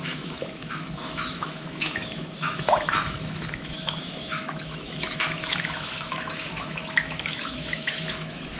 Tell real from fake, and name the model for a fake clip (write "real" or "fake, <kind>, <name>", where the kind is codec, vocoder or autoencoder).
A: fake, autoencoder, DAC-VAE